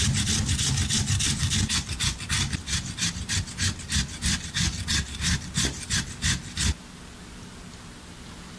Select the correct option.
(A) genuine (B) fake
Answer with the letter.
A